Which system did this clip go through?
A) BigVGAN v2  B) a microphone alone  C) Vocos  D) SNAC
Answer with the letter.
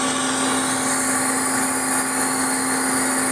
B